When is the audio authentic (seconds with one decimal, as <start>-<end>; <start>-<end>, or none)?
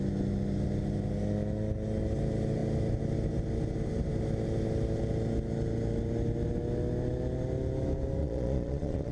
0.0-8.2